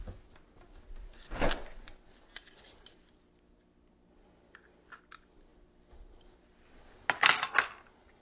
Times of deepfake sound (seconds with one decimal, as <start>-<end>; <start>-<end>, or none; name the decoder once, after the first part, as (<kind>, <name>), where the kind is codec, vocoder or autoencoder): none